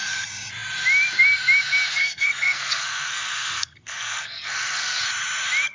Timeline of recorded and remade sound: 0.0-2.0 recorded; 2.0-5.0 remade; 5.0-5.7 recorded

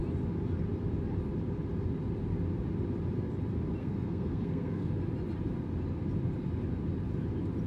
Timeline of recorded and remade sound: 0.0-3.8 recorded; 3.8-4.9 remade; 4.9-7.7 recorded